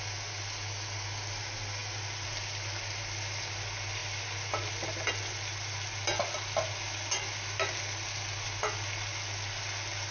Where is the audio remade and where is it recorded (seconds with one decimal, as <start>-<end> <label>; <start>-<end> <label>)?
0.0-10.1 recorded